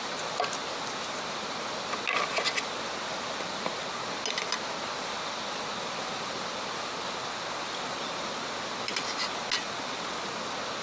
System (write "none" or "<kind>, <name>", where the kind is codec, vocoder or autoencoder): none